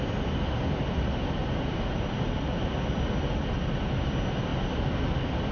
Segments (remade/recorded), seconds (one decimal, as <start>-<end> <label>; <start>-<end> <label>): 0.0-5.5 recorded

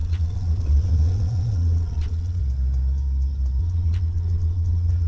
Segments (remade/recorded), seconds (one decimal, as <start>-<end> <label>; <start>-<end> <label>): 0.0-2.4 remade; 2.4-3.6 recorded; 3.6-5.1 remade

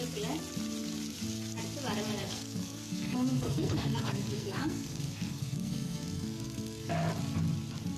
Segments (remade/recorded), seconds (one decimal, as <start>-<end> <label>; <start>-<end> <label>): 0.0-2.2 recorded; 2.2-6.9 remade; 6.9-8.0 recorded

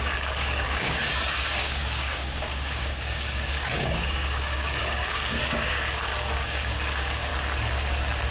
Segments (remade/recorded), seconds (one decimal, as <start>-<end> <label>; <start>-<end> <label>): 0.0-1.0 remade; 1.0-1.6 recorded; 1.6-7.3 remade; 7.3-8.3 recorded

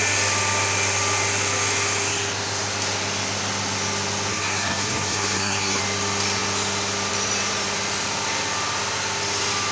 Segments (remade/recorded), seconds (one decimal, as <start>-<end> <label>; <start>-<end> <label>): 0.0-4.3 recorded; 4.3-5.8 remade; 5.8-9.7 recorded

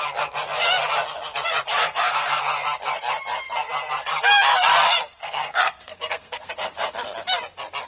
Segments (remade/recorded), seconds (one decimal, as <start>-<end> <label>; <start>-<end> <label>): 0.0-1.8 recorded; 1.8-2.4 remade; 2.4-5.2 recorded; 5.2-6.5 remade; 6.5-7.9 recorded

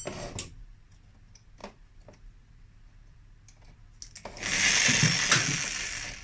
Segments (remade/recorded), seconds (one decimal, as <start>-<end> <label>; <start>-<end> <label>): 0.0-6.2 recorded